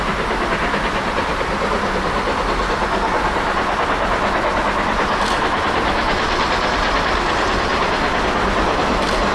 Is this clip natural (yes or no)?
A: yes